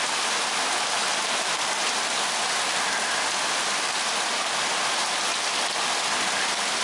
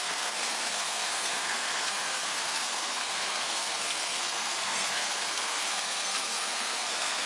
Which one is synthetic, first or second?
second